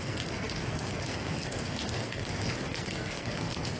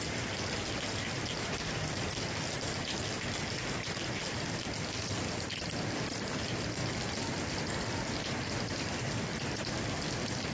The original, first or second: second